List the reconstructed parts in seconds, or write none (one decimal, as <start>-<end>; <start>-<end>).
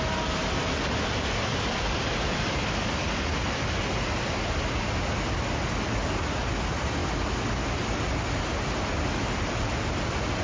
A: none